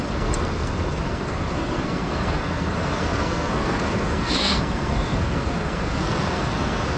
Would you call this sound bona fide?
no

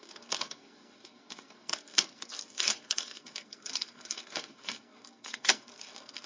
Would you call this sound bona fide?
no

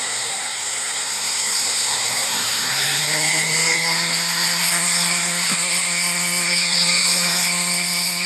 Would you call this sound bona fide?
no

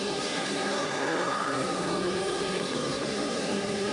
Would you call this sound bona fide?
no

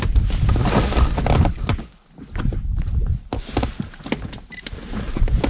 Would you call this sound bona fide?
yes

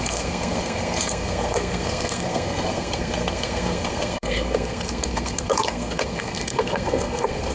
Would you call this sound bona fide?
no